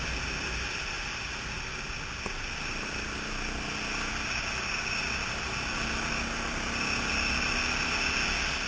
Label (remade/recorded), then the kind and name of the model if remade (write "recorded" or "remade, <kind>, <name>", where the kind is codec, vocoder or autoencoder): recorded